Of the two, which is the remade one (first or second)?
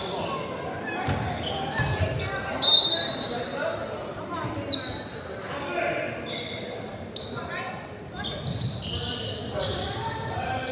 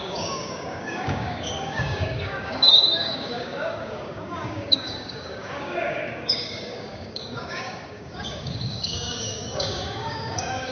second